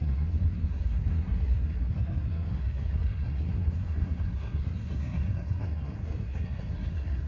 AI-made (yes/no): yes